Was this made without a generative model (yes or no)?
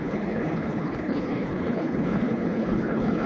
no